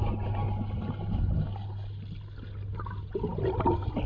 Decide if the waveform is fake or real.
real